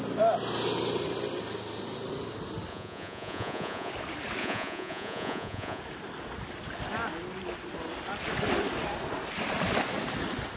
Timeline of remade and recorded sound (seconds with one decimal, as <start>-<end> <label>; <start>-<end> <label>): 0.0-2.7 recorded; 2.7-3.9 remade; 3.9-4.4 recorded; 4.4-5.8 remade; 5.8-10.6 recorded